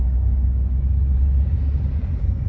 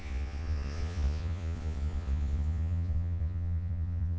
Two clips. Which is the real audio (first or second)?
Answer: first